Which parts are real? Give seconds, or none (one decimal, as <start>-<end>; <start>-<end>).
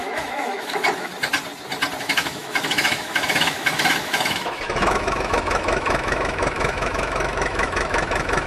1.1-2.0